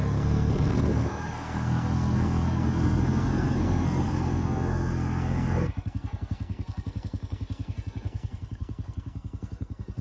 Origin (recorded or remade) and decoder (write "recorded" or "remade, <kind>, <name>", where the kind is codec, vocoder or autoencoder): remade, codec, SNAC